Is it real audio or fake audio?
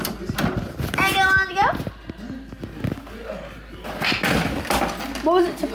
real